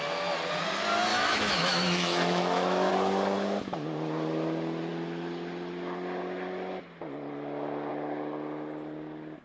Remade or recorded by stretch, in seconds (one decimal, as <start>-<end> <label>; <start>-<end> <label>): 0.0-1.1 recorded; 1.1-2.9 remade; 2.9-9.4 recorded